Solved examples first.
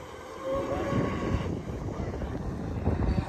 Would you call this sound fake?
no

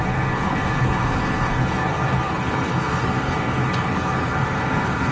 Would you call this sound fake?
yes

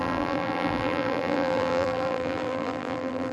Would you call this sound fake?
yes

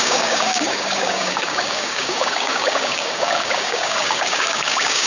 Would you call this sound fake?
yes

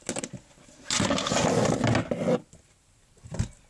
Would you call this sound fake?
no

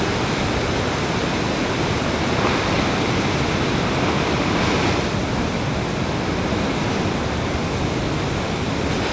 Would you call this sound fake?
no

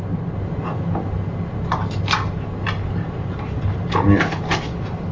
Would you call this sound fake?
no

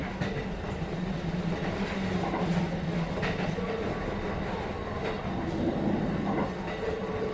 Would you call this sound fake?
no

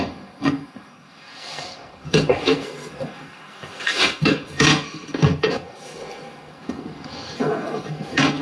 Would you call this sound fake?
yes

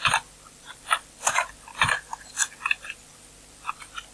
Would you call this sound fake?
no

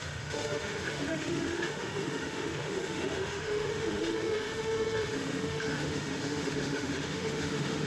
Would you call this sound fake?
yes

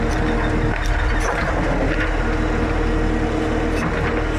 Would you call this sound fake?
no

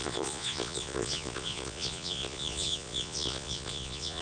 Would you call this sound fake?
yes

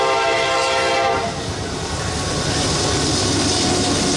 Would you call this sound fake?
no